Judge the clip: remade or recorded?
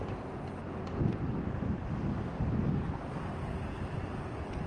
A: recorded